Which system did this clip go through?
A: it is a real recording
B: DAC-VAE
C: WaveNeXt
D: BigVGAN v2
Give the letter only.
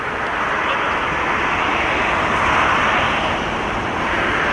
A